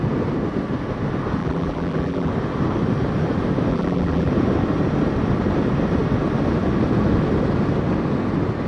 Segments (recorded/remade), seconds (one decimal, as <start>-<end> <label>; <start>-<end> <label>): 0.0-1.4 recorded; 1.4-2.3 remade; 2.3-3.7 recorded; 3.7-4.3 remade; 4.3-8.7 recorded